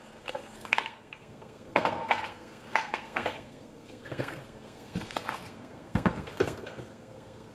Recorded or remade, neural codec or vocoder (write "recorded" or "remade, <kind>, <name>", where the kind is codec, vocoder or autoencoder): remade, codec, SNAC